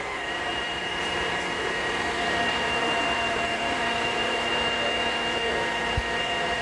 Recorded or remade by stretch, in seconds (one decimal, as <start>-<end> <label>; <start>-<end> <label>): 0.0-0.5 recorded; 0.5-4.5 remade; 4.5-6.6 recorded